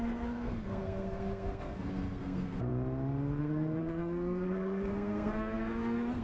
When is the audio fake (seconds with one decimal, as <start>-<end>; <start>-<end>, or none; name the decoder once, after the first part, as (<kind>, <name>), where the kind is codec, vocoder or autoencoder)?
0.0-2.7 (codec, SNAC); 3.4-6.2